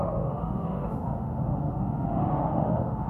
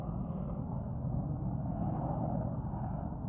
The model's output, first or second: first